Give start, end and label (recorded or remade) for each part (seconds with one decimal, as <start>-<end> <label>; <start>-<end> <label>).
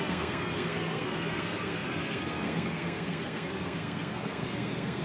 0.0-5.0 remade